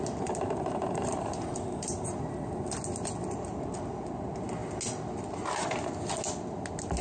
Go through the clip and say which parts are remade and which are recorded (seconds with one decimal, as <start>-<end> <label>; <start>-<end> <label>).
0.0-0.8 recorded; 0.8-2.5 remade; 2.5-7.0 recorded